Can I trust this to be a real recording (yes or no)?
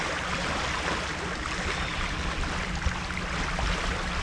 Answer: yes